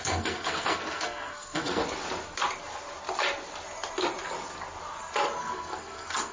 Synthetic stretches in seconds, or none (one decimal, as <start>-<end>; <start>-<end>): 0.0-1.8; 5.4-6.3